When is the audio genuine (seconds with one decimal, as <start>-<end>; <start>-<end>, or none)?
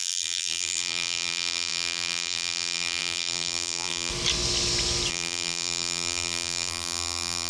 4.1-5.1